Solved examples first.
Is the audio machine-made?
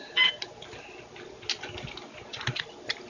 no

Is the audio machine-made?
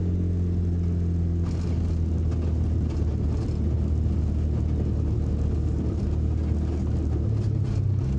no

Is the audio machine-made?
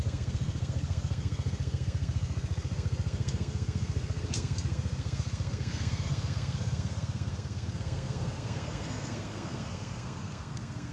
yes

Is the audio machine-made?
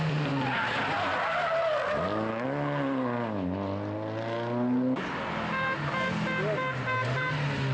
no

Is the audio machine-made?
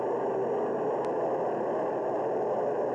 no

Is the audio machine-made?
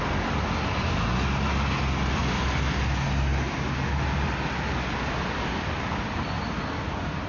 no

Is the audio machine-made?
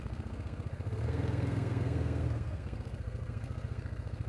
yes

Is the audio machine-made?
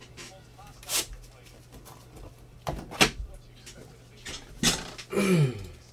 no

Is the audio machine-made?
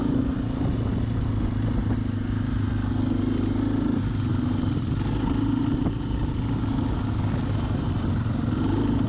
no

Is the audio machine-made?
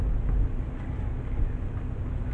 no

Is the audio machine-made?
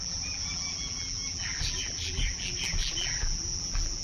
yes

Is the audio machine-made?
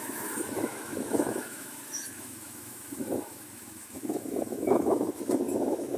yes